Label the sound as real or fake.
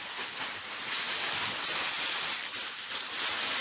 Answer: real